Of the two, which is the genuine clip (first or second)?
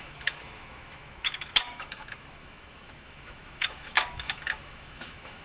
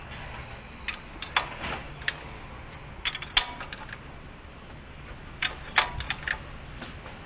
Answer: second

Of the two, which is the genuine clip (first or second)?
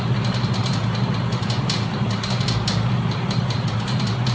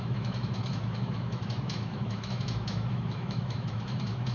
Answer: first